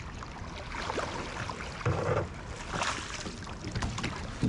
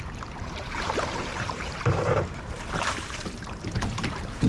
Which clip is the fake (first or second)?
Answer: second